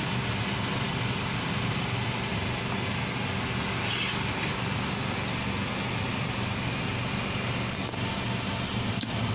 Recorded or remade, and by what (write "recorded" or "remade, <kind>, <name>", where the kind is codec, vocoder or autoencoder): recorded